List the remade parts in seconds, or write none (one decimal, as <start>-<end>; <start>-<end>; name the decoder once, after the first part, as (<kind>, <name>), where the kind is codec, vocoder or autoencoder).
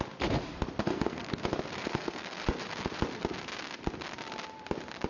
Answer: 0.8-1.3 (codec, SNAC); 1.8-2.4